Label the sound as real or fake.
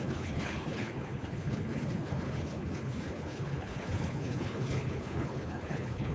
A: fake